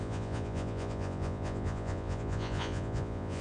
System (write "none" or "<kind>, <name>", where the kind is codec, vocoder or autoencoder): vocoder, Vocos